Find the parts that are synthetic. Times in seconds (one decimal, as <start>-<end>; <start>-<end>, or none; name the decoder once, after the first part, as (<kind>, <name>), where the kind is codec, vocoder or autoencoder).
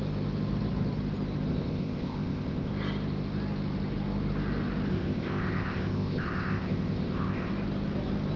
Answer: 1.5-2.7 (codec, ZipCodec); 4.9-7.5